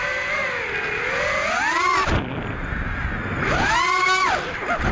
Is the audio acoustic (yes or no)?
yes